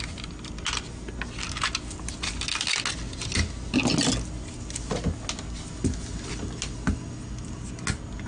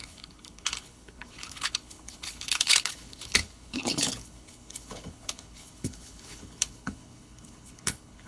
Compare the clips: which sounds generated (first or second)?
second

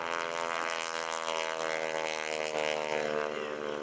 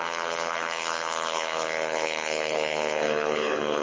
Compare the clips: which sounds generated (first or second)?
second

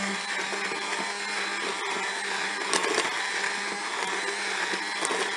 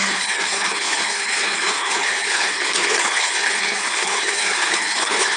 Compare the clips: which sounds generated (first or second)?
second